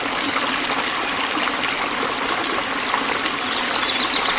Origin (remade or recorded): recorded